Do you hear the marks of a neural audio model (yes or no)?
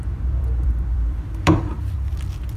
yes